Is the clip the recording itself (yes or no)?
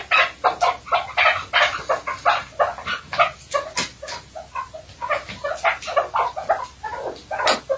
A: yes